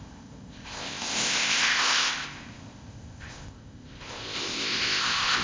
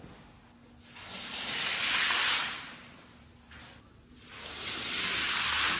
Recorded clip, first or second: second